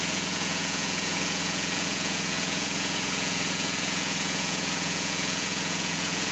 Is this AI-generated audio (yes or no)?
yes